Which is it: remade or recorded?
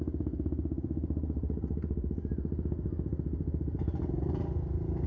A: recorded